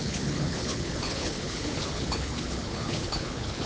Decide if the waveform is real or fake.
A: fake